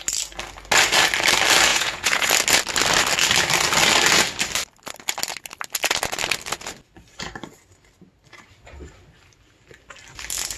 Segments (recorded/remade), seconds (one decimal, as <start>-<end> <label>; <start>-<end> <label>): 0.0-1.7 recorded; 1.7-2.3 remade; 2.3-10.6 recorded